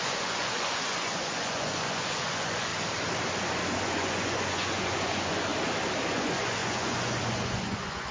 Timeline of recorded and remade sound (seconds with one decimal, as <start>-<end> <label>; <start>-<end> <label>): 0.0-2.7 remade; 2.7-3.8 recorded; 3.8-5.5 remade; 5.5-6.1 recorded; 6.1-8.1 remade